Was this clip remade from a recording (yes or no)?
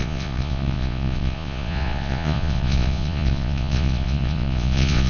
yes